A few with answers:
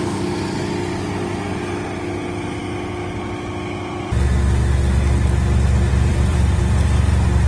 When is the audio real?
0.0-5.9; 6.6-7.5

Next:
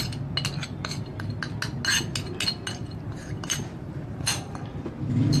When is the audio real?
0.0-2.8; 4.5-5.4

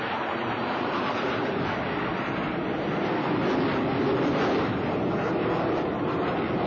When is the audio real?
0.0-0.4; 1.1-6.7

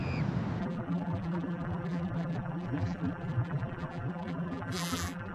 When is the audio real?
0.0-0.6

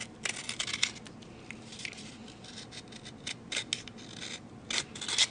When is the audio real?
0.0-5.3